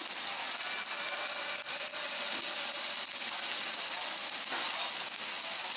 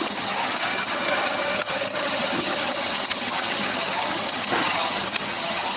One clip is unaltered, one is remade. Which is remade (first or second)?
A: second